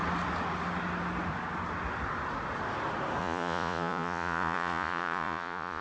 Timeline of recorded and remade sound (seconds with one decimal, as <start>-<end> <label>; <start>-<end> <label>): 0.0-3.2 recorded; 3.2-5.8 remade